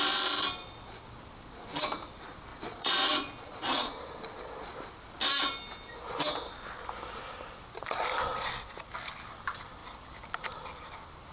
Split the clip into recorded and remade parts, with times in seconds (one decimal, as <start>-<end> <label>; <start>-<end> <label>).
0.0-2.5 recorded; 2.5-4.7 remade; 4.7-11.3 recorded